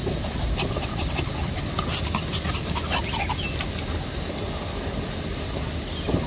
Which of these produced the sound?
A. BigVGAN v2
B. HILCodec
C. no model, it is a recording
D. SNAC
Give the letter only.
C